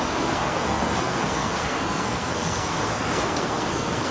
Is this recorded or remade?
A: remade